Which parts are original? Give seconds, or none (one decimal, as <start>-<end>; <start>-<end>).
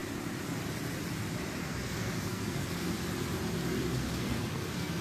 0.0-1.6; 2.9-3.9